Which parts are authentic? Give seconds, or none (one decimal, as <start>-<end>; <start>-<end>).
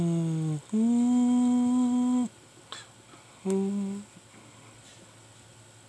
0.0-5.9